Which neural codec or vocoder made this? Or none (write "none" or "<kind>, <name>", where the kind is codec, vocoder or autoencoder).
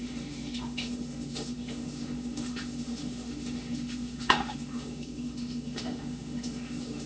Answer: autoencoder, DAC-VAE